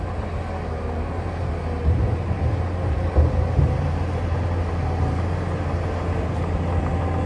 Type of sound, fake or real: real